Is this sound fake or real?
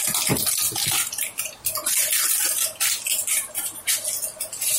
real